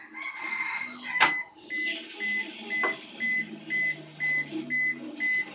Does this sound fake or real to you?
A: real